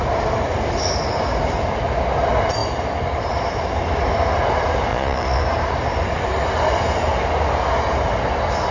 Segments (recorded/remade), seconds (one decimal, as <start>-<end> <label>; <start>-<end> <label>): 0.0-4.9 recorded; 4.9-5.4 remade; 5.4-8.7 recorded